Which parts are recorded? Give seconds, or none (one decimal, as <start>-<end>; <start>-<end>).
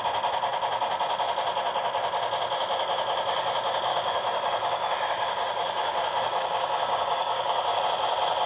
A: 0.0-3.9; 7.8-8.5